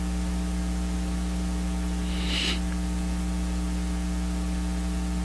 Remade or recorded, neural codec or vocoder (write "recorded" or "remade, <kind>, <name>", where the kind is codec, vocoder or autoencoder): recorded